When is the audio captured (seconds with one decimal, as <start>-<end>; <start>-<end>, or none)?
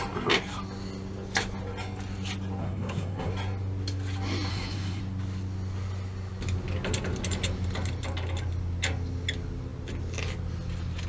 0.0-2.6; 3.3-4.5; 5.0-11.1